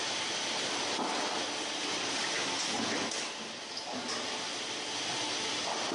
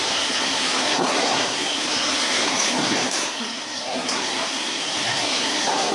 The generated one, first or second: second